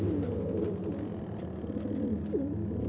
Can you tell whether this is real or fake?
real